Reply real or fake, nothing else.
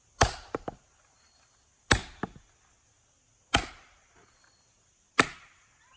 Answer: real